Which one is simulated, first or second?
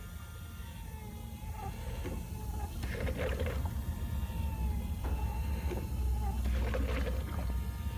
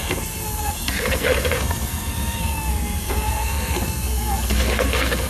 second